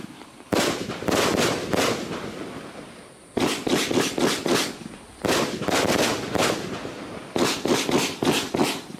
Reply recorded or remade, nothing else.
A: recorded